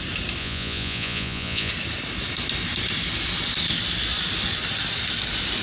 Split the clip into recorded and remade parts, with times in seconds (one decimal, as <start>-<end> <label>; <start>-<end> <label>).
0.0-0.4 recorded; 0.4-1.7 remade; 1.7-5.6 recorded